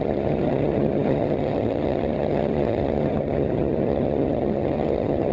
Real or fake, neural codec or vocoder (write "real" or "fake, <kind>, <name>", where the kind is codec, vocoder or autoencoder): fake, vocoder, HiFi-GAN